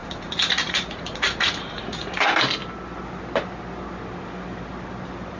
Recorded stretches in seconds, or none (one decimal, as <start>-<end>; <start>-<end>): 2.3-5.4